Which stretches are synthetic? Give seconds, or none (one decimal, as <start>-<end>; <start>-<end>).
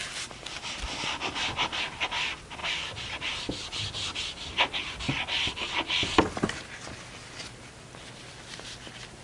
none